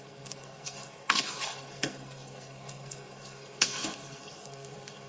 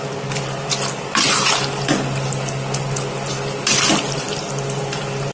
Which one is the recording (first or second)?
second